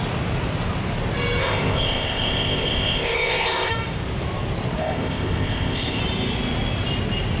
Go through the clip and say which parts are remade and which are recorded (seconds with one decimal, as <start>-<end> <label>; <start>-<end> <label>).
0.0-1.4 recorded; 1.4-3.7 remade; 3.7-4.8 recorded; 4.8-6.0 remade; 6.0-7.4 recorded

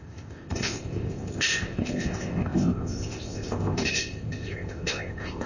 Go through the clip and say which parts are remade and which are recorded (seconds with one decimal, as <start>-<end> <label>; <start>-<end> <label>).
0.0-5.5 remade

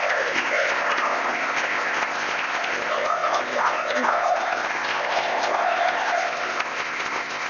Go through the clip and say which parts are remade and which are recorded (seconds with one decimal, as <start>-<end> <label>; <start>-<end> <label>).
0.0-7.5 remade

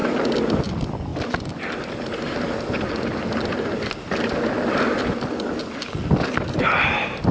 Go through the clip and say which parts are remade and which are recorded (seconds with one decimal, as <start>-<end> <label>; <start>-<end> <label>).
0.0-7.3 recorded

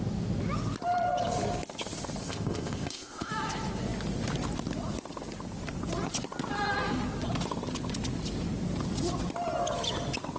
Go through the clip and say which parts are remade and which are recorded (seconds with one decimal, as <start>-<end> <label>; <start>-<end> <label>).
0.0-2.2 recorded; 2.2-3.3 remade; 3.3-10.4 recorded

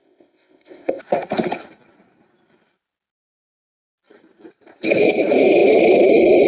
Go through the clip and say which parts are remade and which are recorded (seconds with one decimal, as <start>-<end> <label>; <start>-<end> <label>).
0.0-1.0 remade; 1.0-6.5 recorded